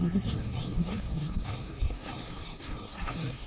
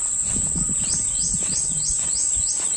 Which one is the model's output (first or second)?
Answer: first